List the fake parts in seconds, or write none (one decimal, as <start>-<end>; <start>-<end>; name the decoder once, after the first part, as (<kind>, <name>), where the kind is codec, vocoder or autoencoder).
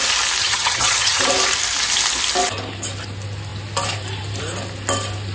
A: 0.4-1.2 (vocoder, HiFi-GAN)